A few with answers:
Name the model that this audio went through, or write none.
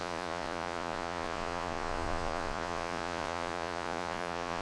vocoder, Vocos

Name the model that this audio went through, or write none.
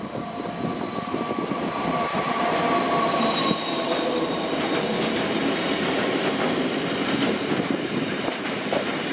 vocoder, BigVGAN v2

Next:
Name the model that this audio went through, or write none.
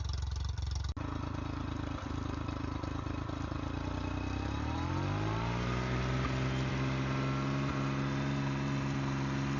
none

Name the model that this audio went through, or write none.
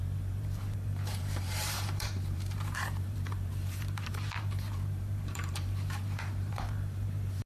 vocoder, BigVGAN v2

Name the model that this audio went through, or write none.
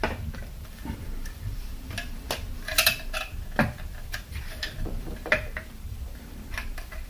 vocoder, BigVGAN v2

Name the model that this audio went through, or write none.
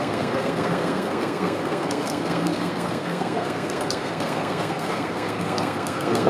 codec, SNAC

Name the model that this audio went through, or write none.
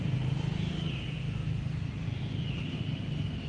none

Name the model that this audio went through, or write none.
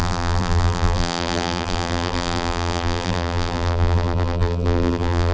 vocoder, BigVGAN v2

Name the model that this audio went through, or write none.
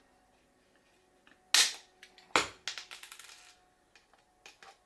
none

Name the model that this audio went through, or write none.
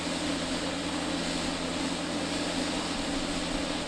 none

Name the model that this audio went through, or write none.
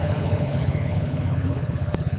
codec, HILCodec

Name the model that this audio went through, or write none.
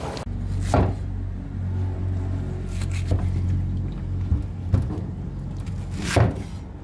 none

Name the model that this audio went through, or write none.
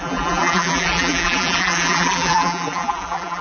vocoder, BigVGAN v2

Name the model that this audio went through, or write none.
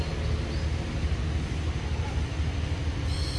none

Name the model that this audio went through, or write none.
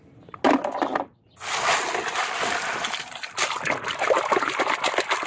none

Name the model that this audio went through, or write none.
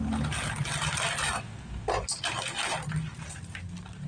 none